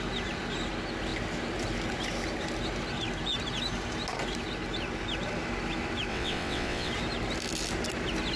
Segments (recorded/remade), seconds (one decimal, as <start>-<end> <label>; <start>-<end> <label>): 0.0-6.1 recorded; 6.1-6.9 remade; 6.9-8.4 recorded